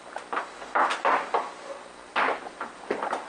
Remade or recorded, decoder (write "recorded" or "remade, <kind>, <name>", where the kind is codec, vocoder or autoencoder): recorded